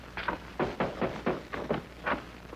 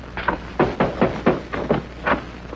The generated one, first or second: first